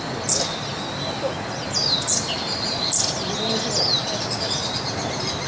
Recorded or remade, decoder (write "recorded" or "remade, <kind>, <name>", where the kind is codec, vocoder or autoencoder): recorded